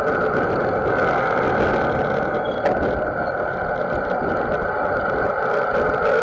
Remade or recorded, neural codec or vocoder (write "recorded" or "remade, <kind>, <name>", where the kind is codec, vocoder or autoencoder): recorded